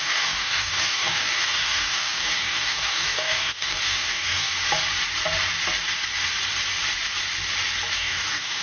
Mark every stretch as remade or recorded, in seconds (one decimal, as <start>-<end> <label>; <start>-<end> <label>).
0.0-4.5 remade; 4.5-7.9 recorded; 7.9-8.6 remade